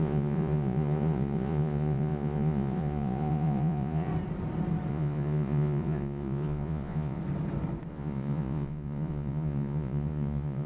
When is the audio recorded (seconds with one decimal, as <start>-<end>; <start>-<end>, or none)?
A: 4.1-4.9; 7.2-7.9